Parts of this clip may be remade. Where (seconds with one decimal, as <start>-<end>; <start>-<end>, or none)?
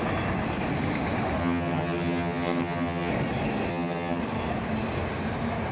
1.4-3.1; 3.7-4.2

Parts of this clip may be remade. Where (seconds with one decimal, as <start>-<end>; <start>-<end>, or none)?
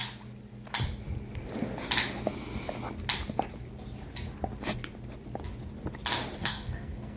6.4-7.2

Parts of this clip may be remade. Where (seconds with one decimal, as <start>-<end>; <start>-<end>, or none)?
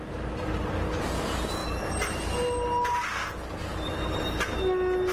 1.6-3.3; 3.7-4.6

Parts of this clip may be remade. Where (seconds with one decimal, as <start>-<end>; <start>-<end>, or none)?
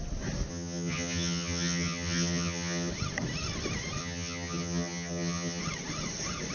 0.5-2.9; 4.0-5.6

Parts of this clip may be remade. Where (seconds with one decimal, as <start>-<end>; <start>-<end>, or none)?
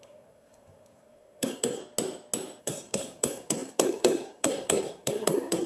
0.0-1.8; 2.6-5.7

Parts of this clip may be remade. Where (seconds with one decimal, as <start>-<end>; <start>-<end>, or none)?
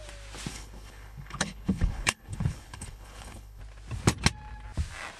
0.5-3.6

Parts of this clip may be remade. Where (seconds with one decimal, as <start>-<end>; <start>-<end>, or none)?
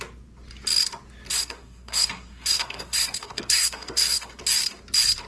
1.3-4.4